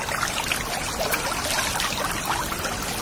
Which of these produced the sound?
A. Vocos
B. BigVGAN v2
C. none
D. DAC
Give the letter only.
C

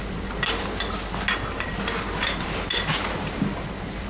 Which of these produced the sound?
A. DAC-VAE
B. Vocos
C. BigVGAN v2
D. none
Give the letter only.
D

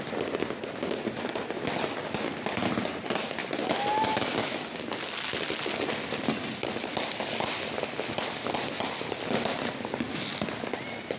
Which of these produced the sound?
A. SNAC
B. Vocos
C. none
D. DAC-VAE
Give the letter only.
C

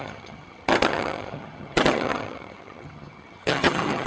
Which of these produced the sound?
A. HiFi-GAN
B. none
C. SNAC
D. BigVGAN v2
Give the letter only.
A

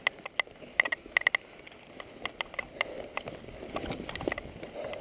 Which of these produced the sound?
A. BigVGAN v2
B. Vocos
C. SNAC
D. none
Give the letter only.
D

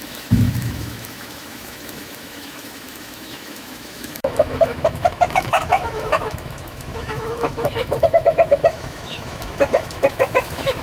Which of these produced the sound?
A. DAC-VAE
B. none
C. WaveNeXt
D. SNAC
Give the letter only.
A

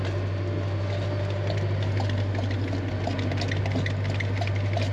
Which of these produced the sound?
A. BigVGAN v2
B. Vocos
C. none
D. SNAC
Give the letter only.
C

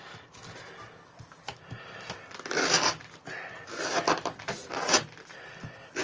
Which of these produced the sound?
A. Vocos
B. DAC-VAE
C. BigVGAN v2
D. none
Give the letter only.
D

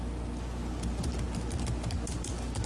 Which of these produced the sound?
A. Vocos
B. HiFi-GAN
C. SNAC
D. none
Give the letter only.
D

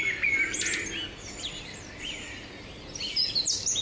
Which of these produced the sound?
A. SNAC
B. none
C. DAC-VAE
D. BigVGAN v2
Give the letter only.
B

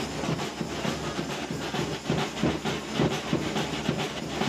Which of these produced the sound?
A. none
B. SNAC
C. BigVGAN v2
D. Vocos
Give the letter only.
A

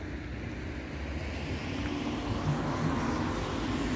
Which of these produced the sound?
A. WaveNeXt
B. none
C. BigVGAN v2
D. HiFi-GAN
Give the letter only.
B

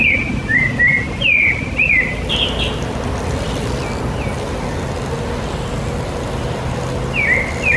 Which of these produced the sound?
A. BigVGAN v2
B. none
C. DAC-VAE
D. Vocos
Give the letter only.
B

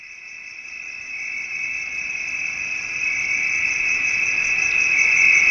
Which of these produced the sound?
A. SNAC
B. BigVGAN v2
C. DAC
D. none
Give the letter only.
D